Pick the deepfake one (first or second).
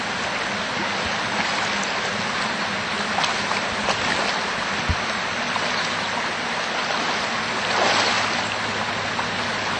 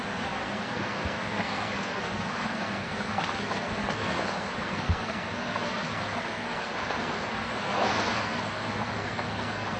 second